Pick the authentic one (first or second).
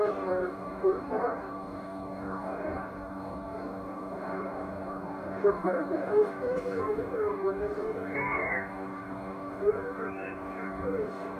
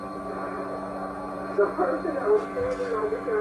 second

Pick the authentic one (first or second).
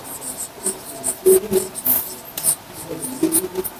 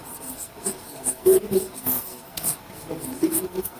first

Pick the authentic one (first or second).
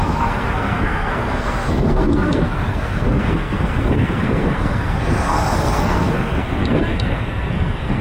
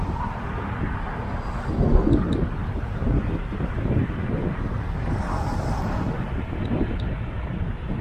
second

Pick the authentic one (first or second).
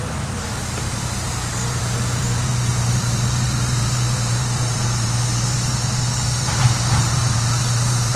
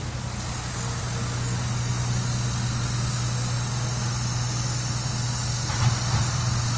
second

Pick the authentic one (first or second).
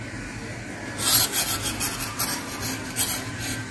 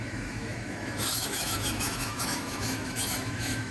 first